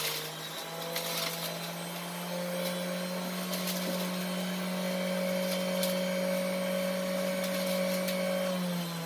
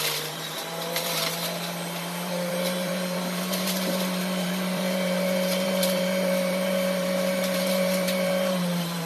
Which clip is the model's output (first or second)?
second